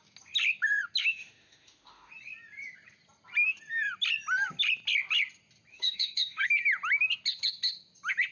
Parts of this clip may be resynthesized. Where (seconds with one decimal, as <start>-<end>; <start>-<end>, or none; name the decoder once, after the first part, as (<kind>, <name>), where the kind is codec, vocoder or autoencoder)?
1.0-2.1 (autoencoder, DAC-VAE); 5.7-6.4